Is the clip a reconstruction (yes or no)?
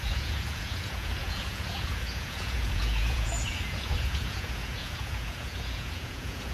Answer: yes